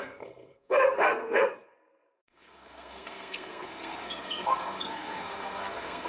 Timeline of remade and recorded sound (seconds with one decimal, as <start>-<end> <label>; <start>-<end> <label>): 0.0-6.1 remade